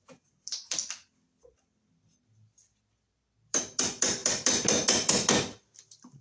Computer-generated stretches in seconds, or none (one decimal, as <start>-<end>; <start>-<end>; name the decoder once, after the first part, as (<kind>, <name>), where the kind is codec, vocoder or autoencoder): 0.0-0.8 (vocoder, BigVGAN v2); 1.9-6.2